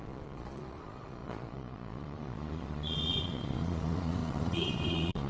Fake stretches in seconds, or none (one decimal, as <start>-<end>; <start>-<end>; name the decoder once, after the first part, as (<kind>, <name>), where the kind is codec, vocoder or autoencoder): 0.0-5.3 (vocoder, Vocos)